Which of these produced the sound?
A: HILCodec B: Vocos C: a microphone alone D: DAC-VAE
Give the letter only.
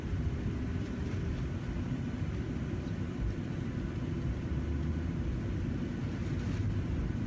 C